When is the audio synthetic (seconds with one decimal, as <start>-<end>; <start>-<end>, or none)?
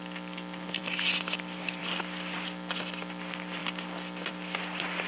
none